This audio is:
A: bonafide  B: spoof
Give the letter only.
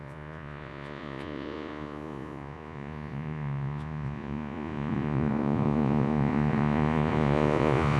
B